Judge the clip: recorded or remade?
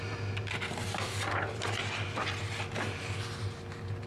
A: recorded